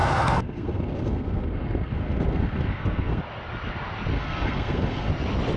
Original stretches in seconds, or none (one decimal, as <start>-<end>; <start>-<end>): 3.2-4.1; 5.1-5.6